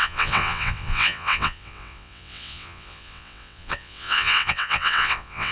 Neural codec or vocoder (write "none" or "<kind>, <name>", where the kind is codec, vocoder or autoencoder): vocoder, WaveNeXt